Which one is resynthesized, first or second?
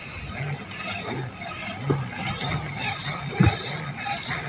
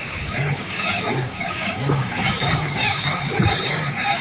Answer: second